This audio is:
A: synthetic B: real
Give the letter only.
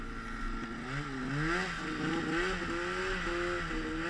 B